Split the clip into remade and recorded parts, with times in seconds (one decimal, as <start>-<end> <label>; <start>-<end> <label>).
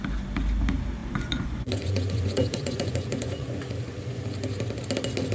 0.0-1.0 recorded; 1.0-4.2 remade; 4.2-5.3 recorded